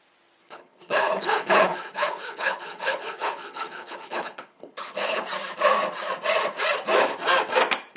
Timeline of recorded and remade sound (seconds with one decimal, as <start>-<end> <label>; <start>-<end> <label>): 0.0-0.4 recorded; 0.4-5.2 remade; 5.2-8.0 recorded